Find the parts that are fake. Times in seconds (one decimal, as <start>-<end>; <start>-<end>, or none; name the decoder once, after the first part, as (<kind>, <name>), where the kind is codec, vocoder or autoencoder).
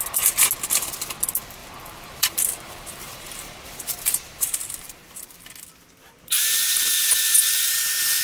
1.6-5.4 (vocoder, BigVGAN v2)